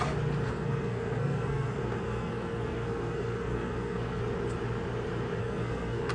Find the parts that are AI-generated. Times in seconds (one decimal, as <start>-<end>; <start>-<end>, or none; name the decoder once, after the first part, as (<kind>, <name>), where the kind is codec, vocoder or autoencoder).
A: 0.5-4.2 (codec, SNAC); 5.4-6.1